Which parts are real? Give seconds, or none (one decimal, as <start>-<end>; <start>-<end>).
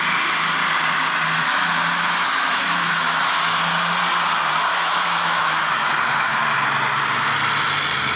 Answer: 0.0-1.4; 3.6-4.7; 6.3-8.2